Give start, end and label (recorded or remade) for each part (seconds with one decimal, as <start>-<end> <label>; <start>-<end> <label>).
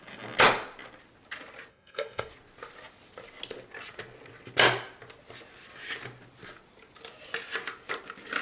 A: 0.0-1.7 recorded; 1.7-2.3 remade; 2.3-8.4 recorded